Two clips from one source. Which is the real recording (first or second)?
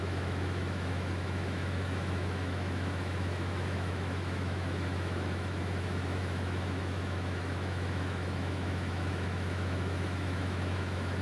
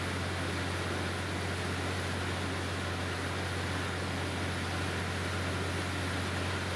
second